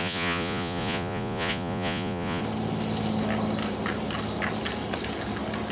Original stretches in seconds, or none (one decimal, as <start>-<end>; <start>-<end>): 2.4-5.7